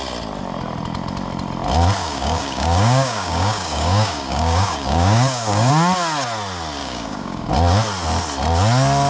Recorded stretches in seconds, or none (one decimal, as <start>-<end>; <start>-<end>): 0.0-2.0; 5.7-6.8; 7.5-9.1